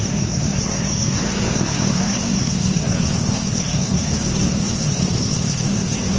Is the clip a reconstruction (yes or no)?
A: yes